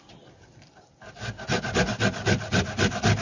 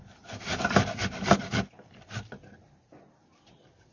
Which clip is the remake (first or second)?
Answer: second